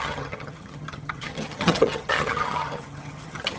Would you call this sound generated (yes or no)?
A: yes